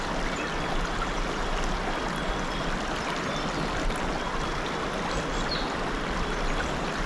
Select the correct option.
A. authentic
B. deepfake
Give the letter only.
A